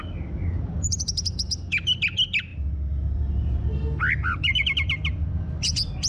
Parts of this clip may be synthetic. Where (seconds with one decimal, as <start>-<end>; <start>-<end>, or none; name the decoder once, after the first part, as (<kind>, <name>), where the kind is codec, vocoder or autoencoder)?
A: none